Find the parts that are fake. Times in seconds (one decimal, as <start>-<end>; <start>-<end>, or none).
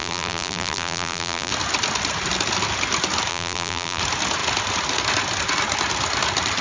0.0-1.5; 3.3-4.0